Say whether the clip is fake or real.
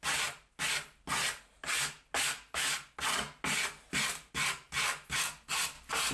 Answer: real